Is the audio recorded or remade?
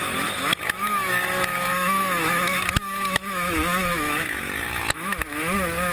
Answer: remade